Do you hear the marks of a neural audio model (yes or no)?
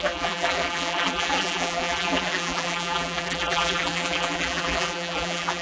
yes